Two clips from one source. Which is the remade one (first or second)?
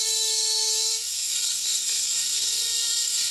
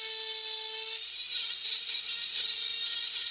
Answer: first